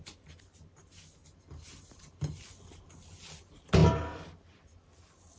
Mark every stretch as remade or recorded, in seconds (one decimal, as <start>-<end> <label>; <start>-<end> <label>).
0.0-1.2 recorded; 1.2-2.4 remade; 2.4-5.4 recorded

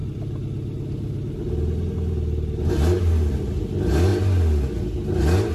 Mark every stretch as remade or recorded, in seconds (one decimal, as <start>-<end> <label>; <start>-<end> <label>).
0.0-3.3 remade; 3.3-5.5 recorded

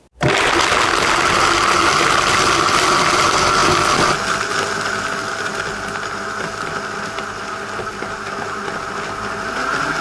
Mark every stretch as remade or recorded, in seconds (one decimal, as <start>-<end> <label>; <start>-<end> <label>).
0.0-10.0 recorded

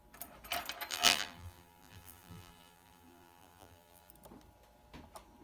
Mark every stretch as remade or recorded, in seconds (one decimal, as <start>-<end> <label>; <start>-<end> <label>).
0.0-0.9 recorded; 0.9-4.1 remade; 4.1-5.4 recorded

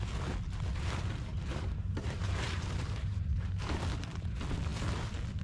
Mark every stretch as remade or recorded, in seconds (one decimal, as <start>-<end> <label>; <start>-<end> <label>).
0.0-1.3 recorded; 1.3-3.8 remade; 3.8-5.4 recorded

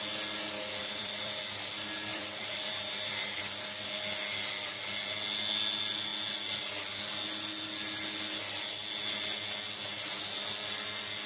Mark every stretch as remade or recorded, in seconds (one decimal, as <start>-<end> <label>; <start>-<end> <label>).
0.0-0.8 recorded; 0.8-1.4 remade; 1.4-2.1 recorded; 2.1-3.4 remade; 3.4-11.3 recorded

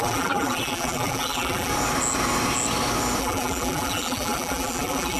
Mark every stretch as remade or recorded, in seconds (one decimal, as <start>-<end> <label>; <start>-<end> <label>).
0.0-1.7 remade; 1.7-3.2 recorded; 3.2-5.2 remade